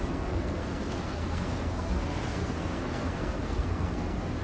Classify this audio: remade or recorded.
remade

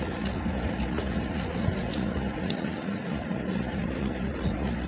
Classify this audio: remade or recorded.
remade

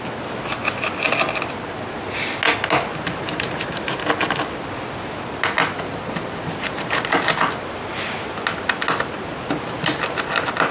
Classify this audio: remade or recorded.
recorded